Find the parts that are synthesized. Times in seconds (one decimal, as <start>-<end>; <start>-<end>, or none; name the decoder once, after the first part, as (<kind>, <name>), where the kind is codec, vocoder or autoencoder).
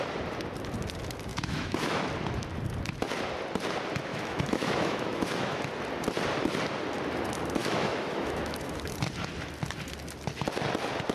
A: 1.3-2.1 (autoencoder, DAC-VAE); 4.1-5.6; 7.6-8.8